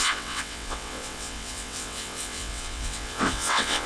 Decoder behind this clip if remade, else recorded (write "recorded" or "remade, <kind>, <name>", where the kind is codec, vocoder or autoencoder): remade, vocoder, WaveNeXt